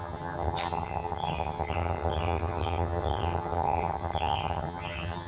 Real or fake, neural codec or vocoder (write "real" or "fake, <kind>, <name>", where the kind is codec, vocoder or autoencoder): fake, vocoder, HiFi-GAN